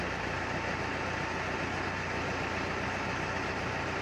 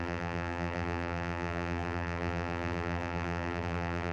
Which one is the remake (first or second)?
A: second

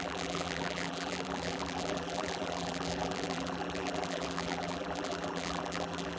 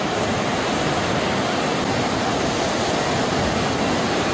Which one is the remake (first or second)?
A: first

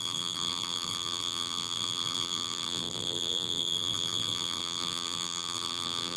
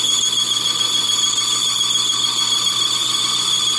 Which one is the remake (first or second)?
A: first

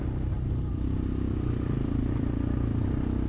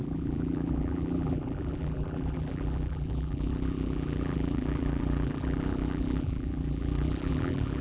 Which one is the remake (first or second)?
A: second